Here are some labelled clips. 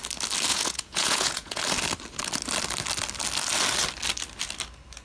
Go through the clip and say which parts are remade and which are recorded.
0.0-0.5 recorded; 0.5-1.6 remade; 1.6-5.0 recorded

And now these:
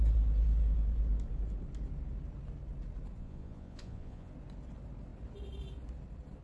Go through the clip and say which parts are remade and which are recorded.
0.0-3.2 recorded; 3.2-4.3 remade; 4.3-6.4 recorded